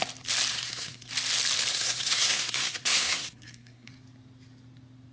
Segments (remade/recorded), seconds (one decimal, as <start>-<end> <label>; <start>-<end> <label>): 0.0-0.5 recorded; 0.5-1.1 remade; 1.1-1.7 recorded; 1.7-3.9 remade; 3.9-5.1 recorded